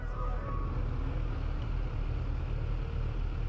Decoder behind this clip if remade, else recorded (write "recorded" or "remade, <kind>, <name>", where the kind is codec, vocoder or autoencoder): recorded